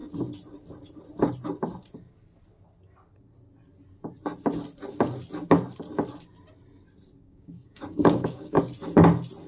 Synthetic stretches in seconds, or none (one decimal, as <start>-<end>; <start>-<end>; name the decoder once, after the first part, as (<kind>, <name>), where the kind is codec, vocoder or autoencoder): 7.2-8.6 (codec, DAC)